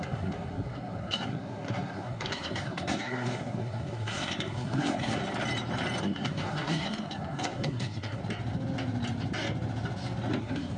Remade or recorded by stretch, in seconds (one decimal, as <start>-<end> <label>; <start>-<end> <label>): 0.0-5.2 remade; 5.2-6.0 recorded; 6.0-8.2 remade; 8.2-10.4 recorded; 10.4-10.8 remade